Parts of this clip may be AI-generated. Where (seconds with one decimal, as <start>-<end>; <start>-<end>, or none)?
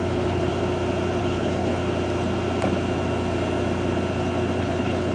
0.0-0.5; 1.2-1.8; 4.6-5.1